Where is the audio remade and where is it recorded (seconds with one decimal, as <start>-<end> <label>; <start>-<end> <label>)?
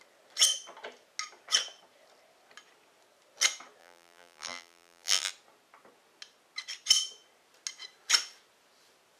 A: 0.0-3.8 recorded; 3.8-5.3 remade; 5.3-9.2 recorded